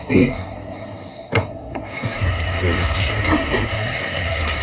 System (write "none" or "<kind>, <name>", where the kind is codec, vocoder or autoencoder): codec, SNAC